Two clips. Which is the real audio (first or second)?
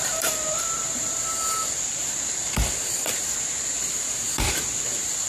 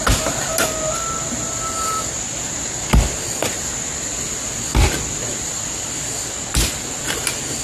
second